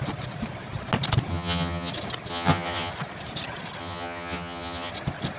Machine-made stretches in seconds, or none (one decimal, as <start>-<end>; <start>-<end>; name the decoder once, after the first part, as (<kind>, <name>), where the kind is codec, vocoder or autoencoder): 1.3-1.9 (vocoder, HiFi-GAN); 2.3-2.9; 3.8-4.9